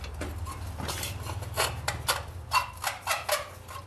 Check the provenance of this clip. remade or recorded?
recorded